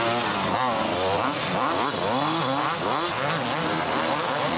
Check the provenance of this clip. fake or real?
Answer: real